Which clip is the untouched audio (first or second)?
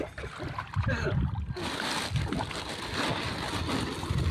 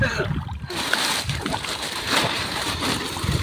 first